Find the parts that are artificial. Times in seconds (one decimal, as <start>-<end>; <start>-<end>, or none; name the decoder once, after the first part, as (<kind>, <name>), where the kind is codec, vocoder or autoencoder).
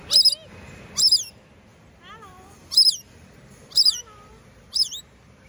1.7-5.0 (vocoder, BigVGAN v2)